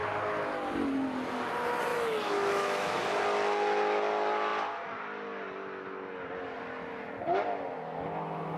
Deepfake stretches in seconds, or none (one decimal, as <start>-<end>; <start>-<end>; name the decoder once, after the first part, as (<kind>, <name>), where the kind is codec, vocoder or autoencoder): 1.9-3.2 (autoencoder, DAC-VAE)